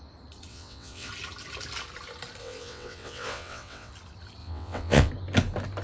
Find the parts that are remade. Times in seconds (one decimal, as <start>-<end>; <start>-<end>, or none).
0.5-1.1; 2.4-3.9; 4.4-5.1